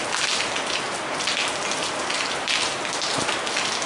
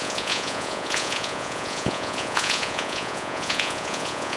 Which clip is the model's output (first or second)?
second